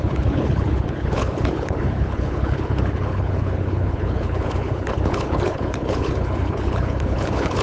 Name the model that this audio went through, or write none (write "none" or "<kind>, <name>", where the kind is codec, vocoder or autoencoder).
codec, HILCodec